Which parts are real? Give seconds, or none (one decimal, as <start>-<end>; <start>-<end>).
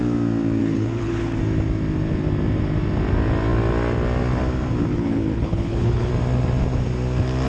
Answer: 0.0-0.6; 1.4-4.9; 6.1-7.5